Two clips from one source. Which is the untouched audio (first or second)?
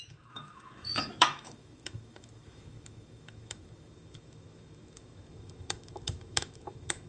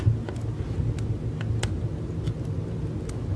second